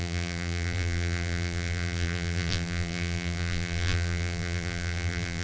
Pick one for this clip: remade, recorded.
remade